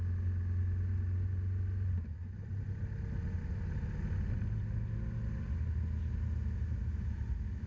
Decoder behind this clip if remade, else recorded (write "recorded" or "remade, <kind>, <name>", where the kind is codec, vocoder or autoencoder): recorded